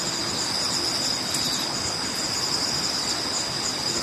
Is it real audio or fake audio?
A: real